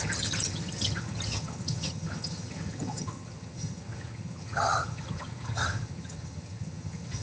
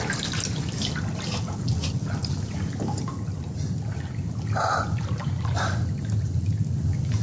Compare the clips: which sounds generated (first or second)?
first